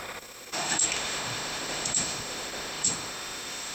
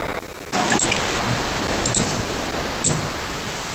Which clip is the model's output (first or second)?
first